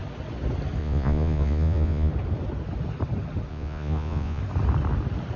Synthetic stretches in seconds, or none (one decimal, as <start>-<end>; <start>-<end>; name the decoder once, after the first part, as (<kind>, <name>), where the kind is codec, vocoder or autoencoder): 0.8-2.1 (vocoder, Vocos); 3.5-4.4